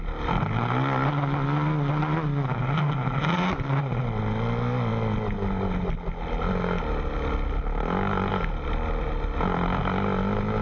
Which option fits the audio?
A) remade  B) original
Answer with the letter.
B